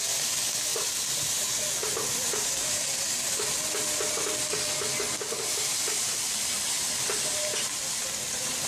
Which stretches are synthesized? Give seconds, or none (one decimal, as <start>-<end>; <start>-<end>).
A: 0.7-1.4; 5.7-6.7